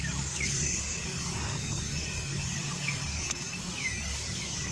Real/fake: fake